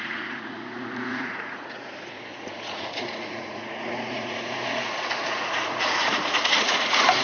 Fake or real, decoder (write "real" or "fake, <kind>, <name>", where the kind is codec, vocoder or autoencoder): fake, vocoder, Vocos